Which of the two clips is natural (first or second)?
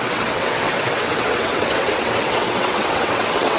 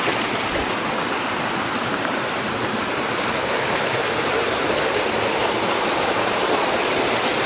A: second